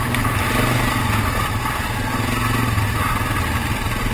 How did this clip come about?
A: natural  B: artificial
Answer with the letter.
A